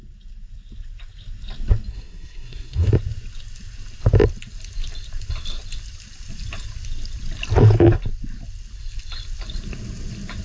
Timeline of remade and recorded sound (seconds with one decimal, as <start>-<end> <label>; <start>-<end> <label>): 0.0-1.9 recorded; 1.9-2.9 remade; 2.9-10.4 recorded